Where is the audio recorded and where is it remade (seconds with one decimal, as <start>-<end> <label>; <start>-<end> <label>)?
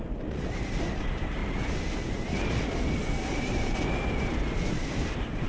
0.0-5.5 recorded